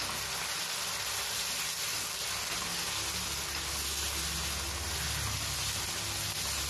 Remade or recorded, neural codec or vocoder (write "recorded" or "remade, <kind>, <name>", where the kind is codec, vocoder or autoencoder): recorded